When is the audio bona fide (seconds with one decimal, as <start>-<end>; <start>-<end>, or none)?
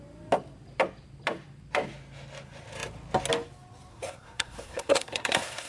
0.0-3.9